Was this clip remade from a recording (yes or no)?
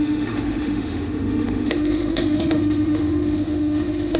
yes